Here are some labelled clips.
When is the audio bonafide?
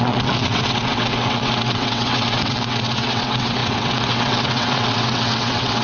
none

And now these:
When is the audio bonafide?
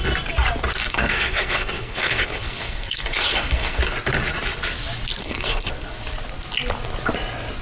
0.0-0.8; 3.8-5.2; 5.7-7.6